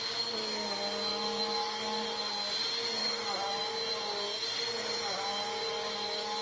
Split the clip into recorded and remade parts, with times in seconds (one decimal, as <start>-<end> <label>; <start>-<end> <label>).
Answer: 0.0-1.1 recorded; 1.1-2.3 remade; 2.3-3.0 recorded; 3.0-3.6 remade; 3.6-5.6 recorded; 5.6-6.4 remade